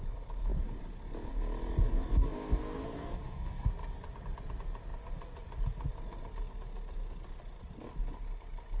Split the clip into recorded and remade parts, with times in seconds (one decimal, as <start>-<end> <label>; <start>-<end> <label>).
0.0-1.8 recorded; 1.8-3.7 remade; 3.7-8.8 recorded